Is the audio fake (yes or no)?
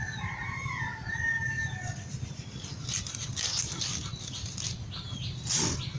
no